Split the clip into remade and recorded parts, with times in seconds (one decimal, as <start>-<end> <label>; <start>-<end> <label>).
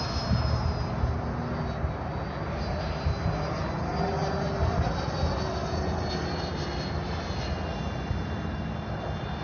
0.0-9.4 recorded